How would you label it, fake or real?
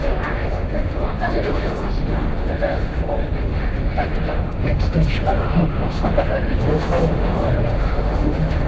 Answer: fake